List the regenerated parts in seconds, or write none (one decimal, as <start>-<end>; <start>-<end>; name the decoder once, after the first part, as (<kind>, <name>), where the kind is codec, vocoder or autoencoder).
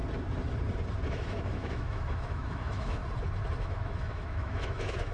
1.1-3.0 (autoencoder, DAC-VAE); 3.6-5.1